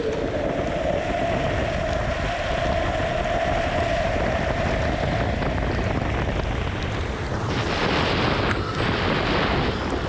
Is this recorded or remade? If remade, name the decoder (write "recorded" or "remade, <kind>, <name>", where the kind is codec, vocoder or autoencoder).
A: recorded